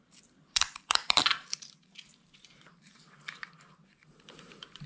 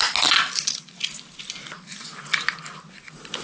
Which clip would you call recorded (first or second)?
second